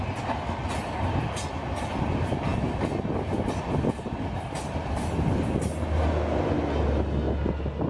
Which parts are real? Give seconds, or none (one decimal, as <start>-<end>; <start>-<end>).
0.0-7.9